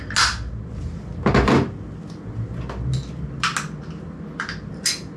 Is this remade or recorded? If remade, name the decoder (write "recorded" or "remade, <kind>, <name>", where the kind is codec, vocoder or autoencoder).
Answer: recorded